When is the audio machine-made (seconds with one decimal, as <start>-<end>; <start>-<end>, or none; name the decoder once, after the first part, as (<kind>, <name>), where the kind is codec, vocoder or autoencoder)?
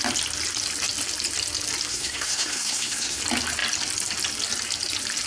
1.9-3.2 (codec, SNAC)